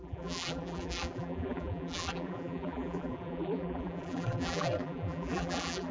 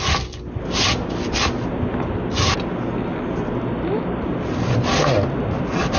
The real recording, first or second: second